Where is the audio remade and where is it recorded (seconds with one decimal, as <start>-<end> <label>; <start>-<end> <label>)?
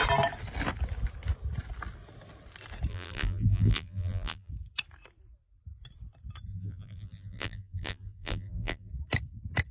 0.0-2.9 recorded; 2.9-4.5 remade; 4.5-6.5 recorded; 6.5-8.9 remade; 8.9-9.7 recorded